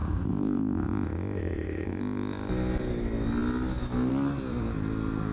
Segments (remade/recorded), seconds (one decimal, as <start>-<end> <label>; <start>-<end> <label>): 0.0-2.5 remade; 2.5-5.3 recorded

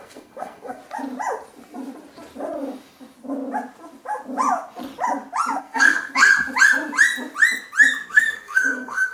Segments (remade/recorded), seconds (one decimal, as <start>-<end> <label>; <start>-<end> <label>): 0.0-0.8 remade; 0.8-5.6 recorded; 5.6-6.3 remade; 6.3-8.1 recorded; 8.1-9.1 remade

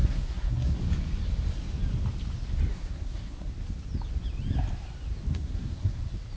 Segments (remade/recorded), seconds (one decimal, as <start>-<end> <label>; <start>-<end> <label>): 0.0-0.8 remade; 0.8-2.7 recorded; 2.7-3.5 remade; 3.5-5.3 recorded; 5.3-6.0 remade; 6.0-6.4 recorded

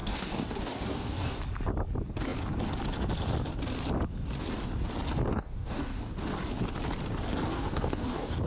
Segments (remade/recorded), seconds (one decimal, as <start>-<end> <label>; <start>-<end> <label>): 0.0-1.4 remade; 1.4-5.3 recorded; 5.3-6.1 remade; 6.1-7.5 recorded; 7.5-8.5 remade

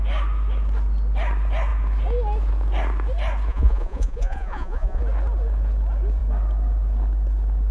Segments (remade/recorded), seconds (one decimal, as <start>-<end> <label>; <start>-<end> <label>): 0.0-3.5 recorded; 3.5-5.0 remade; 5.0-7.7 recorded

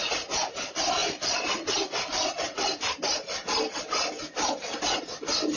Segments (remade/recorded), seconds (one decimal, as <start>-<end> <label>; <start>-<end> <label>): 0.0-1.0 recorded; 1.0-3.8 remade; 3.8-5.6 recorded

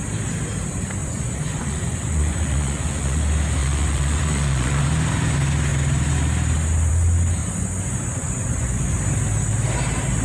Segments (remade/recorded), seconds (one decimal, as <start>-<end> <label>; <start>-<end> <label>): 0.0-1.0 recorded; 1.0-3.2 remade; 3.2-3.6 recorded; 3.6-4.8 remade; 4.8-7.4 recorded; 7.4-9.0 remade; 9.0-10.2 recorded